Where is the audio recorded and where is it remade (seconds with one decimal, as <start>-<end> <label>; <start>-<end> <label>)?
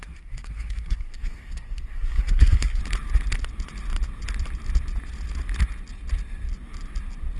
0.0-2.8 remade; 2.8-7.4 recorded